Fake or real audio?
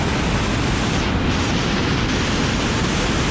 real